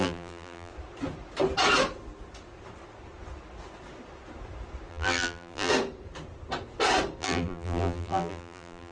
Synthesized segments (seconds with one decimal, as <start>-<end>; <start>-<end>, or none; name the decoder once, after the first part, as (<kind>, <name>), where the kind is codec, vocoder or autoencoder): 0.0-0.7 (vocoder, BigVGAN v2); 4.9-5.7; 7.2-8.9